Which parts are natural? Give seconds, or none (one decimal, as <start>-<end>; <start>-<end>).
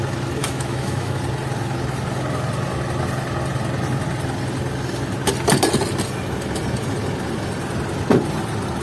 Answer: 0.0-0.4; 1.2-8.8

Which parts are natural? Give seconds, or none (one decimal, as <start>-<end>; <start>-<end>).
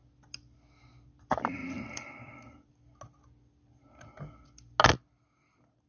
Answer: 0.0-1.6; 2.7-5.9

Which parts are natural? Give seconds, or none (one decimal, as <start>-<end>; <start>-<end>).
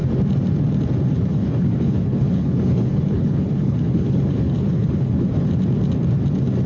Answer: 0.0-1.3; 5.3-6.7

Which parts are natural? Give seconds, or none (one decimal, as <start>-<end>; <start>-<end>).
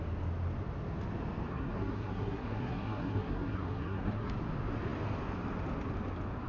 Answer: 0.0-1.5; 4.3-6.5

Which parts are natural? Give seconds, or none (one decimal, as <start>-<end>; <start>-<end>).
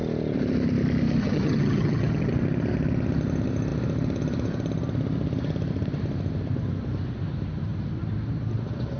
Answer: 0.0-1.2; 2.3-9.0